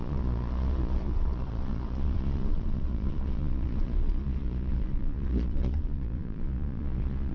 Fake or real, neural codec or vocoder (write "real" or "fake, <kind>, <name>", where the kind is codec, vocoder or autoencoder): fake, vocoder, Vocos